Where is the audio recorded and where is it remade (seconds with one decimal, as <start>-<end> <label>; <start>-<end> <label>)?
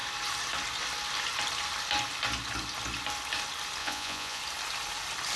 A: 0.0-3.8 recorded; 3.8-4.4 remade; 4.4-5.4 recorded